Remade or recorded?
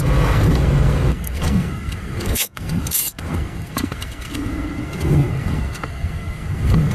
remade